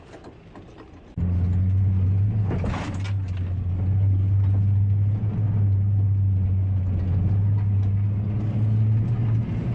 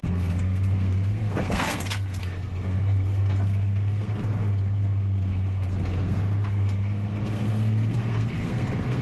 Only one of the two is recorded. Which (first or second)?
first